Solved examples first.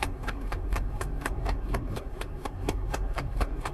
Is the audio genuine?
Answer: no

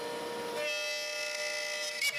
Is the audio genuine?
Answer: yes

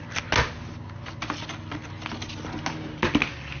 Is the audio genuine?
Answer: yes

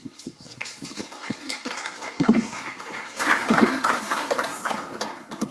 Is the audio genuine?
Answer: no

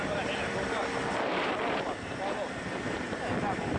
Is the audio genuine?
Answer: yes